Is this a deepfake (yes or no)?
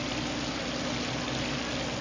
no